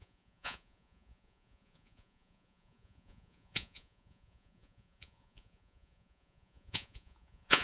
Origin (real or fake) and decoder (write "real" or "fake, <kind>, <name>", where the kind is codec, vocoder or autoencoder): fake, vocoder, Vocos